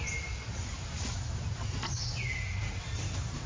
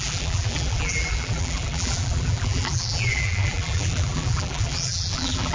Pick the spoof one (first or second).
second